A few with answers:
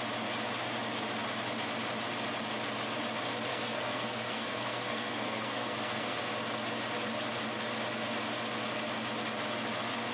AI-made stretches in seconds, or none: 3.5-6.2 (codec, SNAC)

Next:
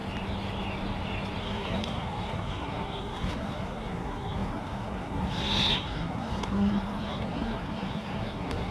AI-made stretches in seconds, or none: 1.4-8.7 (codec, SNAC)